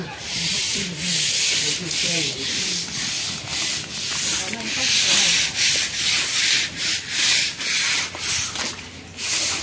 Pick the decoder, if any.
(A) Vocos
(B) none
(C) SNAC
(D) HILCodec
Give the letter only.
B